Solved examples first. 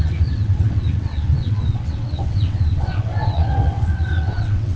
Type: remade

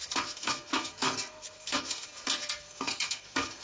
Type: remade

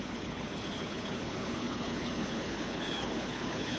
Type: remade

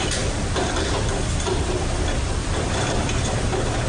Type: remade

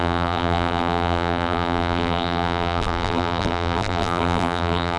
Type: remade